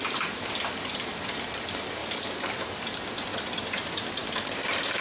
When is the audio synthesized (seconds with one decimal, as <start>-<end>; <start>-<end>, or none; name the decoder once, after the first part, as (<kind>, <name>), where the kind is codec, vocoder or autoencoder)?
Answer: 2.0-2.6 (codec, DAC)